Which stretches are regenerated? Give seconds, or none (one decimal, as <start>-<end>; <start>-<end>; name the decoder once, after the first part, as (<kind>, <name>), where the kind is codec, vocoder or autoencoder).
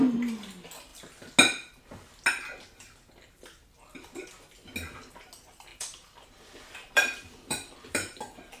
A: 5.7-8.6 (vocoder, BigVGAN v2)